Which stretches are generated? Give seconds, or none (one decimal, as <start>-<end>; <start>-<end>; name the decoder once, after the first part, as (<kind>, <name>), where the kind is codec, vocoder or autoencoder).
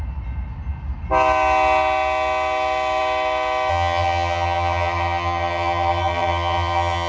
3.7-7.1 (vocoder, HiFi-GAN)